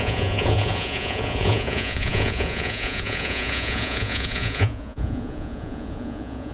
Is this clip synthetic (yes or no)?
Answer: yes